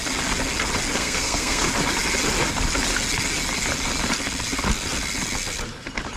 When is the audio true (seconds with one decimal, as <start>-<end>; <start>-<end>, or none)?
0.0-1.0; 1.7-6.2